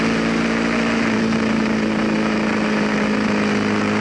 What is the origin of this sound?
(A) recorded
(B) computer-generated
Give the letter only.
A